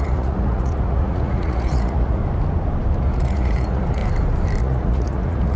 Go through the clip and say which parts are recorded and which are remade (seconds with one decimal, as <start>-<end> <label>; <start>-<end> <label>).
0.0-2.2 remade; 2.2-3.0 recorded; 3.0-4.0 remade; 4.0-4.6 recorded; 4.6-5.6 remade